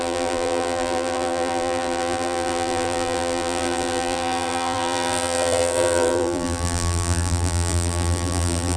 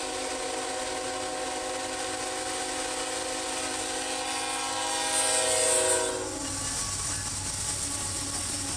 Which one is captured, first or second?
second